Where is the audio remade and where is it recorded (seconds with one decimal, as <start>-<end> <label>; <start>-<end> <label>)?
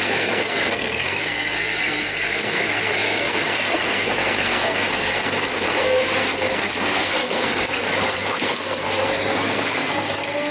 0.0-10.5 remade